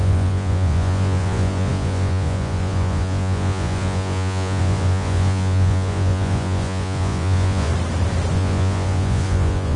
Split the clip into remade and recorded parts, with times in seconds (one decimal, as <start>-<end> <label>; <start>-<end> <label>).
0.0-7.7 remade; 7.7-8.3 recorded; 8.3-9.8 remade